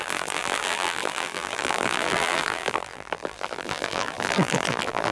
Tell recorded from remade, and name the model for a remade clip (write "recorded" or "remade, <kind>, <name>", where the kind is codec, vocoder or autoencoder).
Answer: remade, vocoder, BigVGAN v2